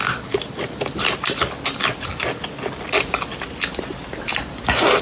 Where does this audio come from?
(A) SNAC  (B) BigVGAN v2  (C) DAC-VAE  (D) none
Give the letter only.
D